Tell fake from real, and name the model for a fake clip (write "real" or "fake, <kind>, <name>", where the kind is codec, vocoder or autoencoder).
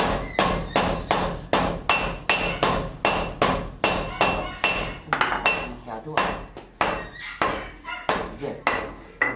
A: real